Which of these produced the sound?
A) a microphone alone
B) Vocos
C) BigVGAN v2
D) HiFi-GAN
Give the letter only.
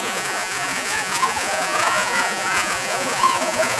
B